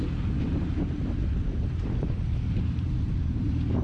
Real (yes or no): no